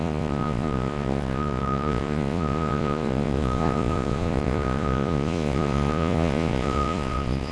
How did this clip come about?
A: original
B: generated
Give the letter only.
B